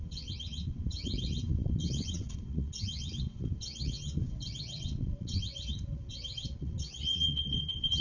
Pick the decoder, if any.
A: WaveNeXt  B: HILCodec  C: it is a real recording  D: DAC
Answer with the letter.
A